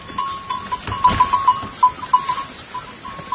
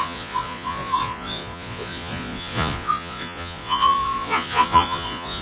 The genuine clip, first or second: first